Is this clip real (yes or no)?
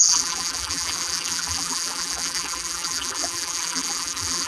no